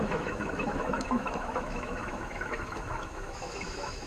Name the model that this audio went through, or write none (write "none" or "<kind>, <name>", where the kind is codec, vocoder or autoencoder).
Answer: autoencoder, DAC-VAE